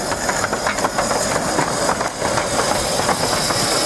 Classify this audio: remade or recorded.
recorded